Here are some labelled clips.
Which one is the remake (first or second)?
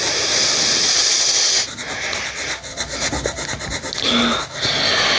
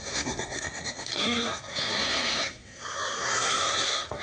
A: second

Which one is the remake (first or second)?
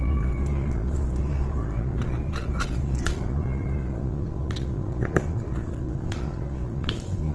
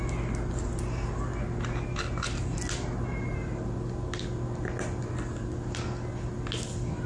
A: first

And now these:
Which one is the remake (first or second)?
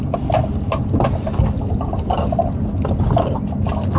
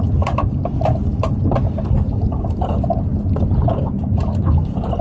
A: second